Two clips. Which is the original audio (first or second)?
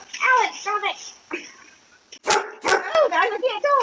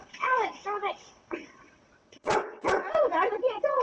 first